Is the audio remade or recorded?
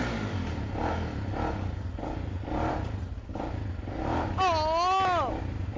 recorded